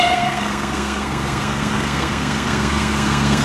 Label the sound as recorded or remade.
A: remade